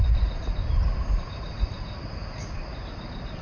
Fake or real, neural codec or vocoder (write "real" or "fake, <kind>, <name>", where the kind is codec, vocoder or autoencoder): real